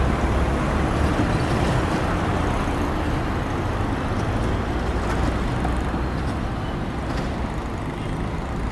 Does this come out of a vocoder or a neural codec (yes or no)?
no